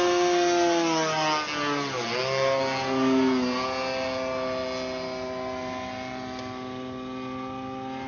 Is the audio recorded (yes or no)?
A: yes